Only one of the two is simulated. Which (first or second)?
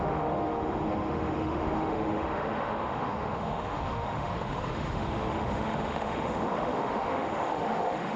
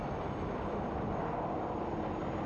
first